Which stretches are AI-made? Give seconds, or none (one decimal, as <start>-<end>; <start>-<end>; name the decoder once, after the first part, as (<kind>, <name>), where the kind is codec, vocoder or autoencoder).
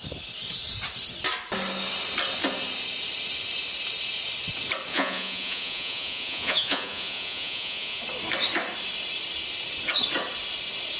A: 4.9-8.0 (vocoder, Vocos)